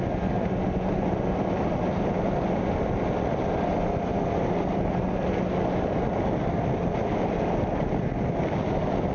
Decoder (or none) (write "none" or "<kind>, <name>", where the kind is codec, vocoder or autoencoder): none